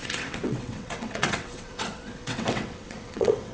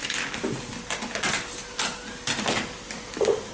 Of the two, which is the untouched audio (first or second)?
second